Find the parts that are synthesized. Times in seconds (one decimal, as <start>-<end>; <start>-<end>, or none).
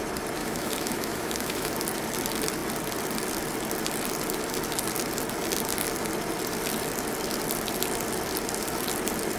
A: 0.4-1.7